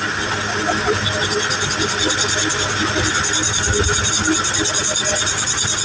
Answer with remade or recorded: recorded